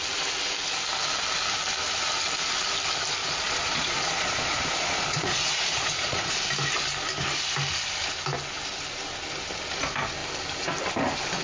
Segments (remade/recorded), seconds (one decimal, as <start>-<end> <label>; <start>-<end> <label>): 0.0-3.2 recorded; 3.2-6.3 remade; 6.3-11.4 recorded